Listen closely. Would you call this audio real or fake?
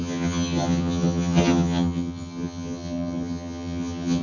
fake